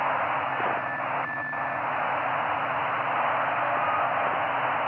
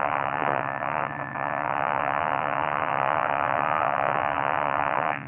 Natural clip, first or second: first